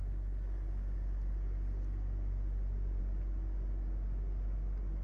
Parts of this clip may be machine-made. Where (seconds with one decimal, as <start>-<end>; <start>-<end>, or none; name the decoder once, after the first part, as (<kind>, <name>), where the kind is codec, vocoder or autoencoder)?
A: none